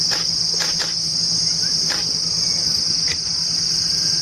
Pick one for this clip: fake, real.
real